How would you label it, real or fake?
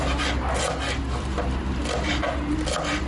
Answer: real